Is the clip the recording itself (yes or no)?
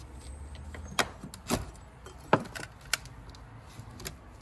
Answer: yes